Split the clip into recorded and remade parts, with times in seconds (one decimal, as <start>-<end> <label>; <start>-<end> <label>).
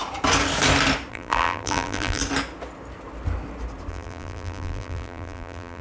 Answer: 0.0-1.1 recorded; 1.1-2.2 remade; 2.2-3.9 recorded; 3.9-5.8 remade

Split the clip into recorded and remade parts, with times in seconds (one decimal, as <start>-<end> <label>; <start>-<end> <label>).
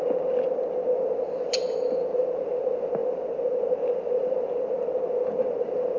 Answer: 0.0-6.0 recorded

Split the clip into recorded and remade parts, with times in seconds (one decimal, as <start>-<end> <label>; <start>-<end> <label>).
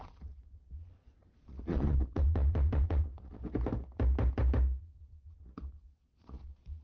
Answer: 0.0-3.4 remade; 3.4-4.8 recorded; 4.8-6.8 remade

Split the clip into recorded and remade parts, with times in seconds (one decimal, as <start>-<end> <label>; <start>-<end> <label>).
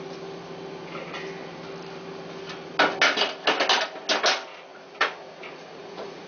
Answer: 0.0-4.7 recorded; 4.7-6.3 remade